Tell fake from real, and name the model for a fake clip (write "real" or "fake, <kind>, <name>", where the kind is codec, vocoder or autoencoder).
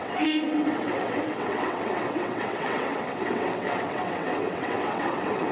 fake, vocoder, WaveNeXt